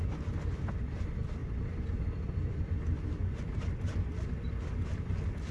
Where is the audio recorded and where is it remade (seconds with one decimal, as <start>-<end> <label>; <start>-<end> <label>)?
0.0-5.5 recorded